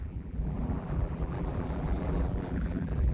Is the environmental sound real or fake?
fake